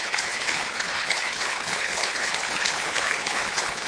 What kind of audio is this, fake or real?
fake